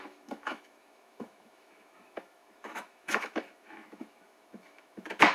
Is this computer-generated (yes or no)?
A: yes